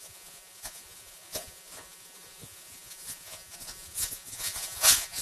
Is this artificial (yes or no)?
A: yes